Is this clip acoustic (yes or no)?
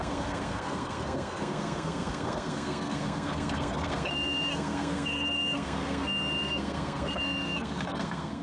no